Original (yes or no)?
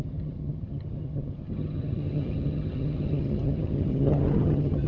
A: no